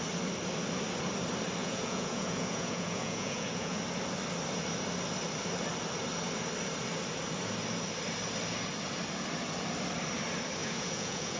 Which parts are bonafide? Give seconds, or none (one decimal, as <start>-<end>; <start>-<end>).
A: 0.0-1.6; 3.8-10.6